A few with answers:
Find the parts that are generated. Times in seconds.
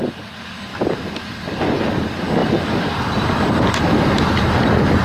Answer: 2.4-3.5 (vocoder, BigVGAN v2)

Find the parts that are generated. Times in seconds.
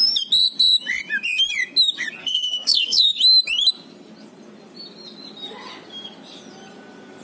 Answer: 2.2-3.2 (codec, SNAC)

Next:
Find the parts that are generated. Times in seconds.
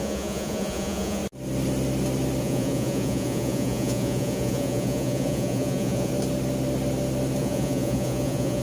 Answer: 0.0-1.2 (vocoder, Vocos); 2.4-6.1; 7.4-8.6